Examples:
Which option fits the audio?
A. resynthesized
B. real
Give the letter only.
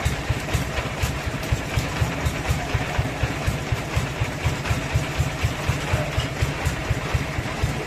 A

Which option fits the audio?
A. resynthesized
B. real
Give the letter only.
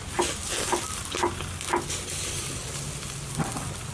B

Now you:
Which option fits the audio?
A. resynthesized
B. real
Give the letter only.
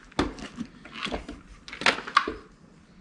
B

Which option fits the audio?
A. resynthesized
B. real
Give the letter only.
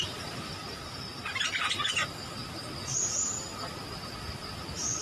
A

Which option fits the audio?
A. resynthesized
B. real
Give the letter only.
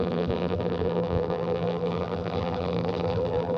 A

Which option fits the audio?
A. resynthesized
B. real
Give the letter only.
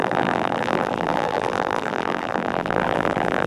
A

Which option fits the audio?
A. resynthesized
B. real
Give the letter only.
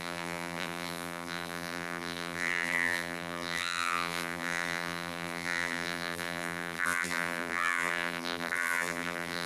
A